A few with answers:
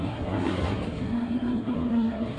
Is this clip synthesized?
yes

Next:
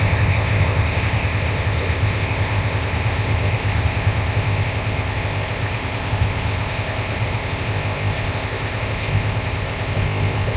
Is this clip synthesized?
yes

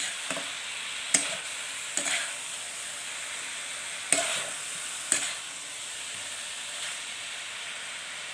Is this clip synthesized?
no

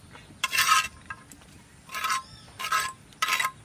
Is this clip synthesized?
no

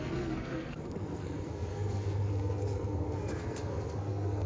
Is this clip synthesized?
yes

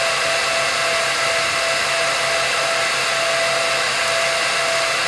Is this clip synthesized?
no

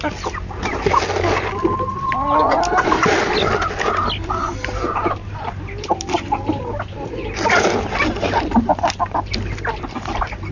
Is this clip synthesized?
no